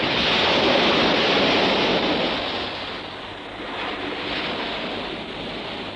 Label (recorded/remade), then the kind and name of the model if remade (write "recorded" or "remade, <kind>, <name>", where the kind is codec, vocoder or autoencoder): recorded